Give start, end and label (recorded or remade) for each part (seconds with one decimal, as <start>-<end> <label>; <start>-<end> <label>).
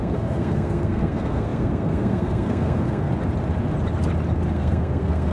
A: 0.0-3.1 remade; 3.1-4.5 recorded; 4.5-5.3 remade